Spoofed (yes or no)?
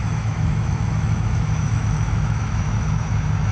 yes